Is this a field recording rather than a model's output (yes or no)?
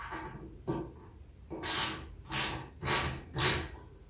yes